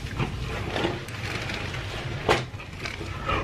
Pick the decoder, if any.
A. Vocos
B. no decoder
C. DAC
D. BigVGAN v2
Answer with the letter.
B